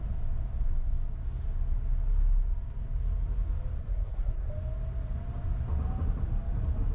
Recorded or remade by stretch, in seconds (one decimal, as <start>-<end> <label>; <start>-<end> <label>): 0.0-3.8 recorded; 3.8-4.5 remade; 4.5-6.9 recorded